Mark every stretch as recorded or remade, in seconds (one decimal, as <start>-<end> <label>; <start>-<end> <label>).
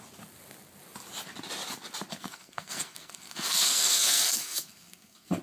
0.0-2.1 recorded; 2.1-5.4 remade